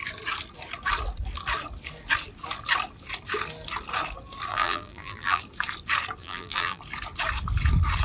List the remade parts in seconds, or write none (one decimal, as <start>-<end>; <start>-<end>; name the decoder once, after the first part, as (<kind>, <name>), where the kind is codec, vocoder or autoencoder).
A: 4.5-5.4 (vocoder, BigVGAN v2); 6.2-6.8